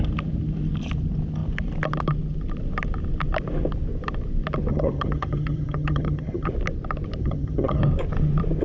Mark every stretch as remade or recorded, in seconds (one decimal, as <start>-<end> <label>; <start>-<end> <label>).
0.0-4.7 recorded; 4.7-6.5 remade; 6.5-7.2 recorded; 7.2-7.8 remade; 7.8-8.6 recorded